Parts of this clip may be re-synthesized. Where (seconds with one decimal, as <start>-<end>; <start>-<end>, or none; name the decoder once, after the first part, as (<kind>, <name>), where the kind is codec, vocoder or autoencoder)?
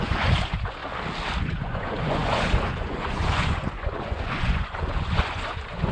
0.0-0.8 (vocoder, Vocos); 1.4-5.9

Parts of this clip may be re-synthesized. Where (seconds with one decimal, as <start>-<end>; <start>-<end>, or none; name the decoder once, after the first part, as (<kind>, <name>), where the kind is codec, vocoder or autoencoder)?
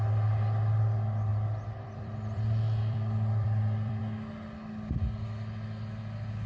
1.3-4.0 (vocoder, BigVGAN v2)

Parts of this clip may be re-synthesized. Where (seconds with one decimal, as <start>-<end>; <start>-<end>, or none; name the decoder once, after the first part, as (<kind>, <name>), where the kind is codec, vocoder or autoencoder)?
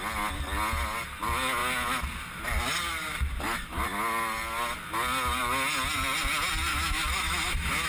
6.7-7.9 (autoencoder, DAC-VAE)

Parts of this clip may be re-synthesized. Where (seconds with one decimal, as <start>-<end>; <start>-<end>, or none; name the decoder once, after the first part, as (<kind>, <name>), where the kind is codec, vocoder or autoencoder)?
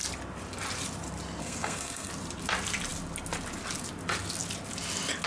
1.4-2.1 (codec, SNAC)